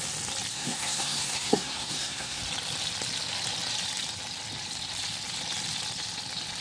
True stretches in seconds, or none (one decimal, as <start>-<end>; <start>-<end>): 0.0-0.5; 2.4-6.6